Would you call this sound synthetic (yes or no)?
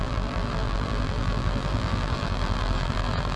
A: yes